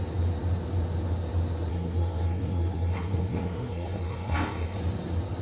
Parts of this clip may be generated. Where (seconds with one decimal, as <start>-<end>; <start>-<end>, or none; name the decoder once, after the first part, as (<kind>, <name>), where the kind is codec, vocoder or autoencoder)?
1.7-4.8 (codec, SNAC)